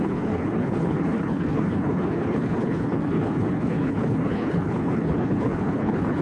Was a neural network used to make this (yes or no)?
yes